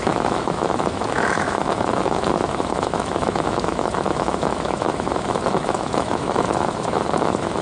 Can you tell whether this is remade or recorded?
remade